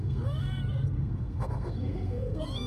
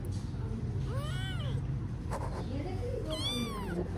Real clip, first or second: second